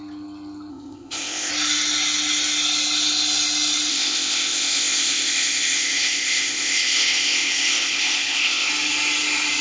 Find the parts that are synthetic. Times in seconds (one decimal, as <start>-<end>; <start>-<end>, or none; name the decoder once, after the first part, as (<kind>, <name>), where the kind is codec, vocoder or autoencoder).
0.7-1.5 (codec, ZipCodec); 3.9-8.7